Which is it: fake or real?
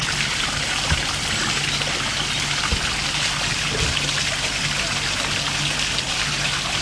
real